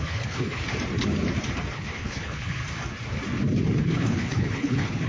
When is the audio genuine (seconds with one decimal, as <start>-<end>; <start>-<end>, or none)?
0.6-1.7; 2.6-3.8